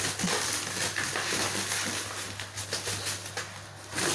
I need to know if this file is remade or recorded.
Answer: recorded